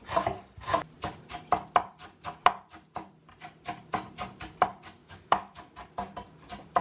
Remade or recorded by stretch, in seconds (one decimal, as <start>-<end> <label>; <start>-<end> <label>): 0.0-5.0 recorded; 5.0-5.7 remade; 5.7-6.8 recorded